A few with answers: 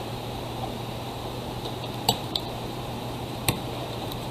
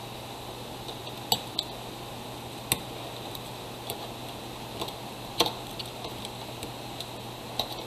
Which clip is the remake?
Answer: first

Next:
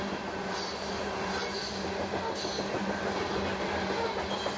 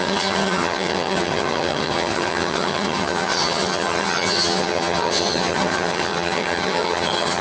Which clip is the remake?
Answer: second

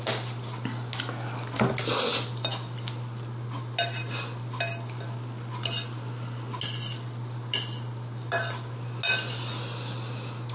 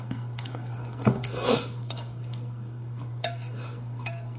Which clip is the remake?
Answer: second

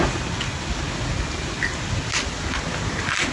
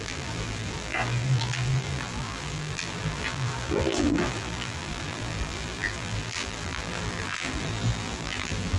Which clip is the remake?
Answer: second